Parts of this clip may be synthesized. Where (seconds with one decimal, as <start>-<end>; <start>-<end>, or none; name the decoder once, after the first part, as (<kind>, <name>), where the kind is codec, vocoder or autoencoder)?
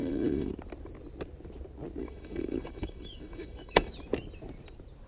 0.0-0.5 (autoencoder, DAC-VAE); 2.0-3.9